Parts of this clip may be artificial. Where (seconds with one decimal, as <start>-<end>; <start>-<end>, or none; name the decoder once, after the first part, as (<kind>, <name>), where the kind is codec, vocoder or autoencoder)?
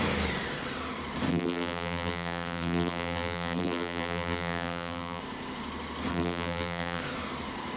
1.3-5.2 (vocoder, BigVGAN v2); 6.1-7.0